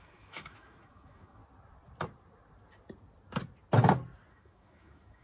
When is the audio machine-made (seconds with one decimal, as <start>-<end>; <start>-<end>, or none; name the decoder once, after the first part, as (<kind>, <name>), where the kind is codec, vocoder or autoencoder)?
0.0-1.4 (autoencoder, DAC-VAE); 4.3-5.2